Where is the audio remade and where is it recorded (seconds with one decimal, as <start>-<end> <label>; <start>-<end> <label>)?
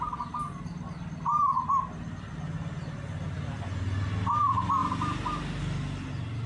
0.0-6.5 recorded